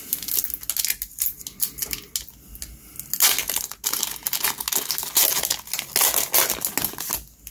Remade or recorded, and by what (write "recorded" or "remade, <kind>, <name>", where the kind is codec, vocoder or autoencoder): recorded